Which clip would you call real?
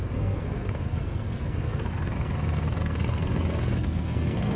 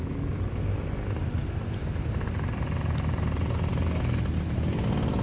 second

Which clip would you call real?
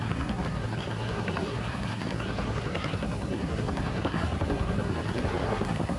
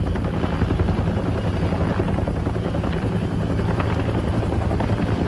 second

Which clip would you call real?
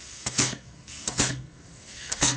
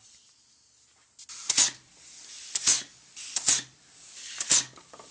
second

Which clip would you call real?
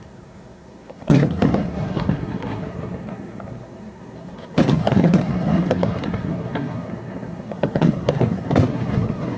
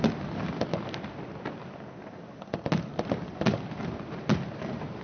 second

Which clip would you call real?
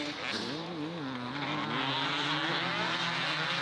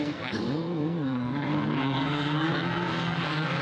first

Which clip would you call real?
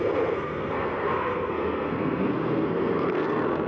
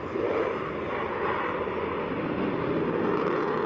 second